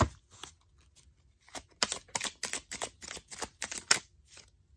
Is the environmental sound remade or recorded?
recorded